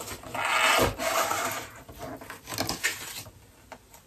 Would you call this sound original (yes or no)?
yes